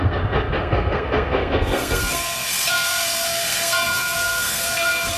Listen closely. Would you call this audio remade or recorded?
remade